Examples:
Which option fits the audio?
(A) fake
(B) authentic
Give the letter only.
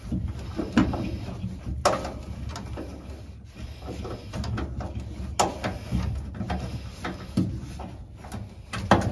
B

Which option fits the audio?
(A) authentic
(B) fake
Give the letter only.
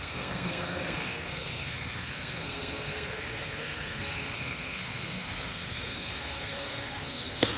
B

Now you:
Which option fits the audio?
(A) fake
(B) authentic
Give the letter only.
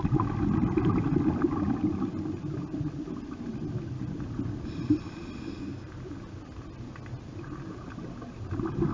B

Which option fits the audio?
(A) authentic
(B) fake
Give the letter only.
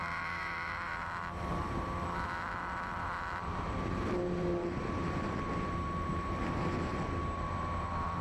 B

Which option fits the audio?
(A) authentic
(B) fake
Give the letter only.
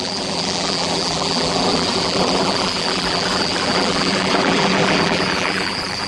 B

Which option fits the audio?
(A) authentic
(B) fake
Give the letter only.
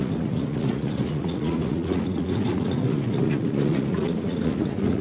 B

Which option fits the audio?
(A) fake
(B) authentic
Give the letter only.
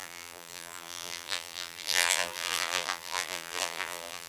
A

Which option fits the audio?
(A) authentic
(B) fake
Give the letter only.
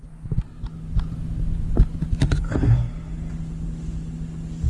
A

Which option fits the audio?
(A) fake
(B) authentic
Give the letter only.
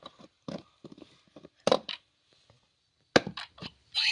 B